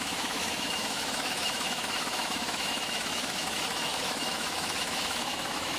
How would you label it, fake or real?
fake